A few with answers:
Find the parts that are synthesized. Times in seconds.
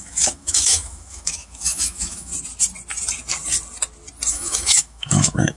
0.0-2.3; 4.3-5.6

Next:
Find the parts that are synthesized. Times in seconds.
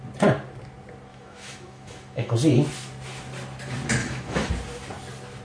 1.1-2.3; 4.0-4.5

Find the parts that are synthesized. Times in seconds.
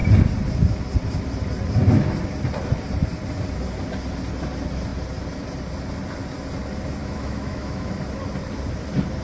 7.0-7.9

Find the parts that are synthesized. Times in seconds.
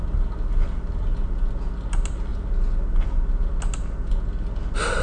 none